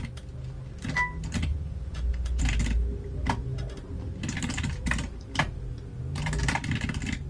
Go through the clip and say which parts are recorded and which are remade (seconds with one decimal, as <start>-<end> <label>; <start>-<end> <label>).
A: 0.0-1.5 recorded; 1.5-2.4 remade; 2.4-7.3 recorded